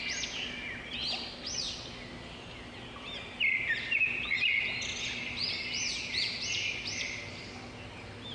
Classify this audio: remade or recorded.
recorded